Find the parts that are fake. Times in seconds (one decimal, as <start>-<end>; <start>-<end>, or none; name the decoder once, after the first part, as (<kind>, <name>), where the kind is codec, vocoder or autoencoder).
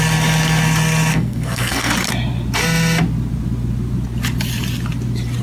1.1-1.9 (codec, SNAC)